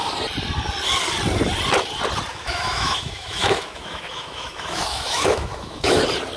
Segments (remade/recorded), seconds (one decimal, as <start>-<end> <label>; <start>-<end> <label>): 0.0-2.3 recorded; 2.3-6.0 remade; 6.0-6.4 recorded